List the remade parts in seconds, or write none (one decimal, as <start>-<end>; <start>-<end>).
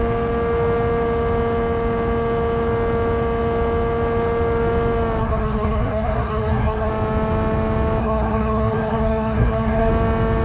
5.2-6.9; 8.0-9.9